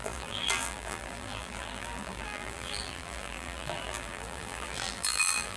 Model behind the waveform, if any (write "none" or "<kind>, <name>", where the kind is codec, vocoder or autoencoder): vocoder, BigVGAN v2